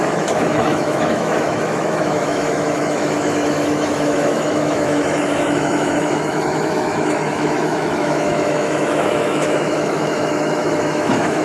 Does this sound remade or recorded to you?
remade